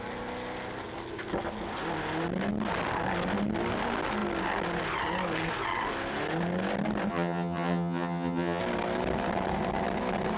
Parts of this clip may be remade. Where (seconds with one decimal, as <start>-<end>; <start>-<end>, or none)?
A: 7.1-8.6